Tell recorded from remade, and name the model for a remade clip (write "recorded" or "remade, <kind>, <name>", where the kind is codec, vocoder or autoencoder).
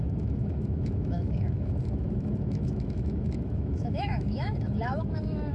remade, autoencoder, DAC-VAE